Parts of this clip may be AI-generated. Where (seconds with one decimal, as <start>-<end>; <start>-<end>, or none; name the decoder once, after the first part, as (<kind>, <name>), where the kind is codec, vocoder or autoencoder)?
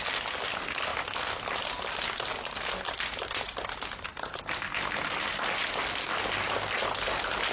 none